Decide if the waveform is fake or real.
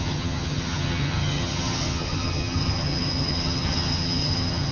fake